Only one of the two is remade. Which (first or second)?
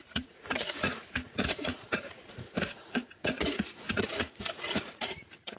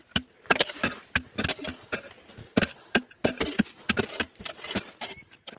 first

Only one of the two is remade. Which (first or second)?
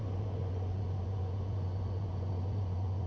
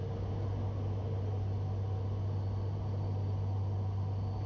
first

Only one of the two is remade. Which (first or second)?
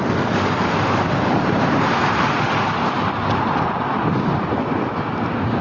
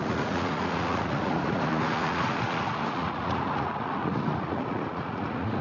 second